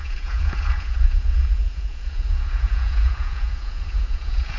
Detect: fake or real fake